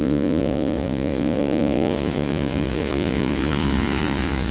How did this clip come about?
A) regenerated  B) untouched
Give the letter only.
A